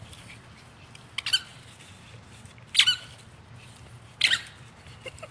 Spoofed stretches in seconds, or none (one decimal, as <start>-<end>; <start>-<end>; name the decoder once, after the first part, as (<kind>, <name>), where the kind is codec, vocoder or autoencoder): none